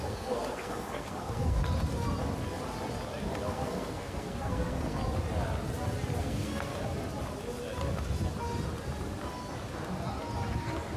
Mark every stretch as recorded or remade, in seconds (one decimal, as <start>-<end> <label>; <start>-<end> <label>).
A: 0.0-1.6 remade; 1.6-3.4 recorded; 3.4-5.0 remade; 5.0-6.2 recorded; 6.2-6.7 remade; 6.7-10.6 recorded; 10.6-11.0 remade